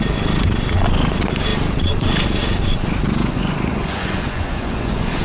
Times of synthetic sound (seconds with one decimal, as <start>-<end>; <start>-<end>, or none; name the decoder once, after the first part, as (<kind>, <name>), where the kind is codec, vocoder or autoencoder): 3.2-5.2 (vocoder, Vocos)

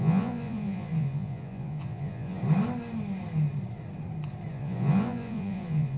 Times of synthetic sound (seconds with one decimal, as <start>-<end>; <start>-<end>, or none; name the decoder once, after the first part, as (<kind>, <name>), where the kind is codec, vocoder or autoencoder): 0.0-2.4 (vocoder, Vocos); 4.5-6.0

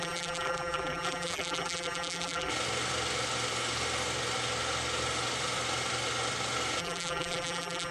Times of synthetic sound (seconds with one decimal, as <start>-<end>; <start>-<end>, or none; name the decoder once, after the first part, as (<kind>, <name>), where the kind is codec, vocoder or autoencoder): 0.0-2.5 (vocoder, BigVGAN v2); 6.8-7.9

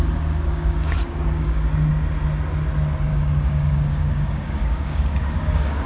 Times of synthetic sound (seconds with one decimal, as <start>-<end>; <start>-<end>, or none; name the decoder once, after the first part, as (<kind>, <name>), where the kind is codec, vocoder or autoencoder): 0.5-1.9 (codec, DAC); 3.1-5.9